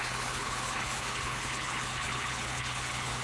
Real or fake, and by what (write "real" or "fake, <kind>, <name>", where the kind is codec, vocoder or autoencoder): fake, codec, HILCodec